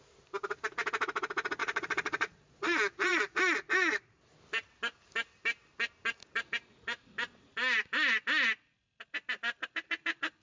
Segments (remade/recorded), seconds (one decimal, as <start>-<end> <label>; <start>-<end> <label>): 0.0-1.6 recorded; 1.6-4.2 remade; 4.2-10.4 recorded